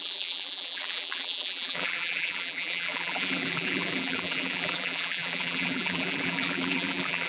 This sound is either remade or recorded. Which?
remade